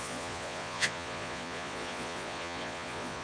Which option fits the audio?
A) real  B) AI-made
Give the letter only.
B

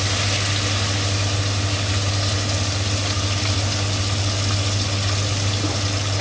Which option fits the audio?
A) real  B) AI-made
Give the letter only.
A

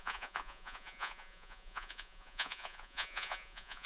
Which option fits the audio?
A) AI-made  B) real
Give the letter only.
A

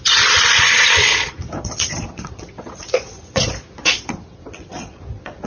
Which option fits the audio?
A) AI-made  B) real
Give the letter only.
A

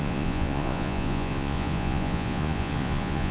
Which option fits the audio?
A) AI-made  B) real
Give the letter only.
A